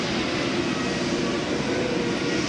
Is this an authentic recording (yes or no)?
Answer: yes